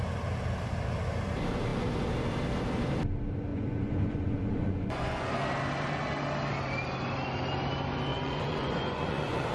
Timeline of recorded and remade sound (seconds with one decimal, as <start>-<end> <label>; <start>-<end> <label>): 0.0-3.5 recorded; 3.5-5.3 remade; 5.3-8.1 recorded; 8.1-9.5 remade